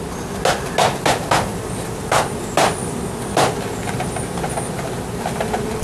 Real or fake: real